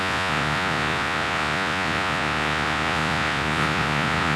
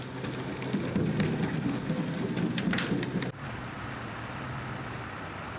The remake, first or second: first